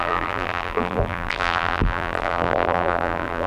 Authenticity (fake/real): fake